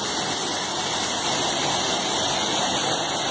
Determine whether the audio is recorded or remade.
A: recorded